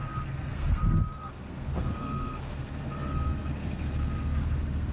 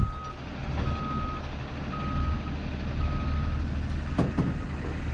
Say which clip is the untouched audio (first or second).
second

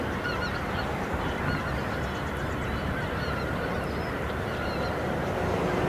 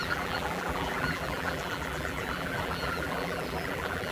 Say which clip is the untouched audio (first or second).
first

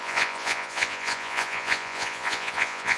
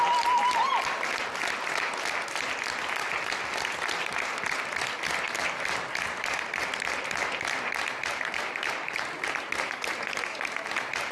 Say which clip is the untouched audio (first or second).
second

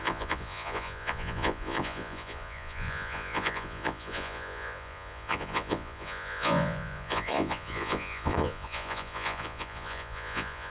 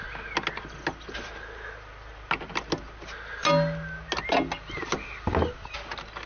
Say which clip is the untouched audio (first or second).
second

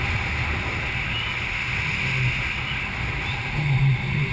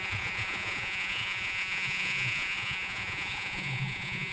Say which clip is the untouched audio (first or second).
first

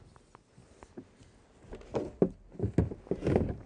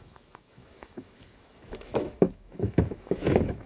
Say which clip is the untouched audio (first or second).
first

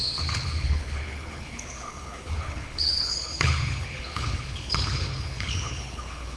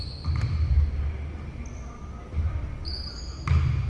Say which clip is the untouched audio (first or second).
second